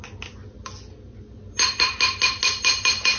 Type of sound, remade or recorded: recorded